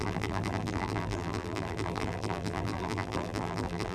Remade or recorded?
remade